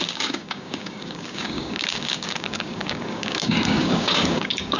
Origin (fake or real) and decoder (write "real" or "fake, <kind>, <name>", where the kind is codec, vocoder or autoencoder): fake, codec, DAC